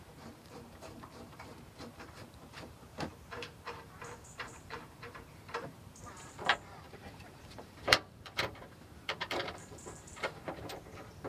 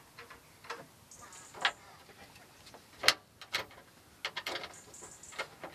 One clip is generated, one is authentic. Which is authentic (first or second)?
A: second